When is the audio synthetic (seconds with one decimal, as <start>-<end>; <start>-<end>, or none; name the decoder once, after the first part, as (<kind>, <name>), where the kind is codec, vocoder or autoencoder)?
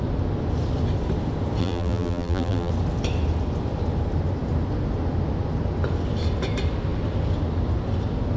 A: 1.6-2.7 (vocoder, BigVGAN v2)